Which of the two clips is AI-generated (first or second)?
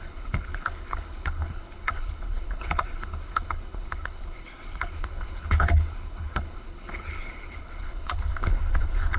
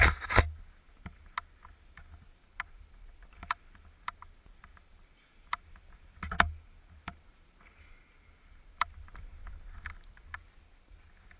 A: first